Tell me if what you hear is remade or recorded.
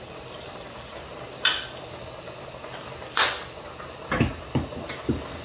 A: recorded